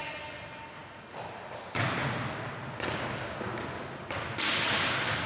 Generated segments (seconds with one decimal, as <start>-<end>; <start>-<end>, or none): none